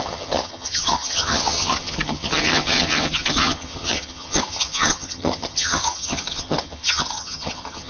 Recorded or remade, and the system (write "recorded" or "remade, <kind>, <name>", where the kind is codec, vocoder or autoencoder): remade, vocoder, HiFi-GAN